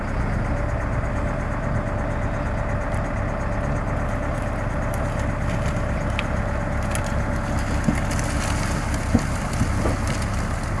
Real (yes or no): yes